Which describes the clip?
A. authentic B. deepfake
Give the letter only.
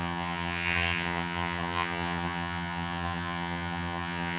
B